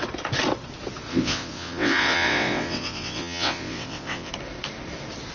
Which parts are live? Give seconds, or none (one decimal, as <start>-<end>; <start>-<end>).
0.0-1.1; 4.3-5.3